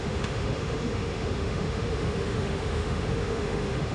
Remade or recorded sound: remade